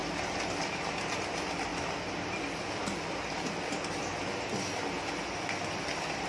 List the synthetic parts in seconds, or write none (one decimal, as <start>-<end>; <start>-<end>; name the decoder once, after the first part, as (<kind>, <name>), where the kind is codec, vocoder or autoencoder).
none